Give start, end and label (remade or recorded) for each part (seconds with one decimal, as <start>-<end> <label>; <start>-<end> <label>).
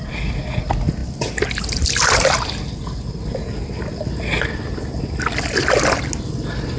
0.0-6.8 recorded